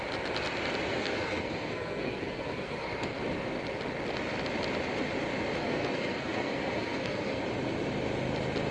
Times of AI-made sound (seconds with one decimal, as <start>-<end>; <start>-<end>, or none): 0.9-3.2; 5.6-7.4